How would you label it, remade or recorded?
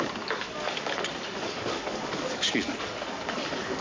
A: remade